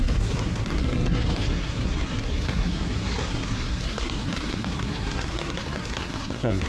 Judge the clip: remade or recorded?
remade